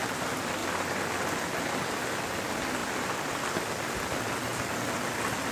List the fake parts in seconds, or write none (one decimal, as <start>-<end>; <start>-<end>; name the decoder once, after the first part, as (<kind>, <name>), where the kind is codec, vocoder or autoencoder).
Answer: 0.6-1.6 (vocoder, BigVGAN v2); 4.5-5.1